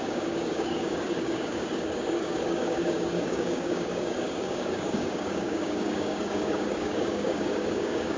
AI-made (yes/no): yes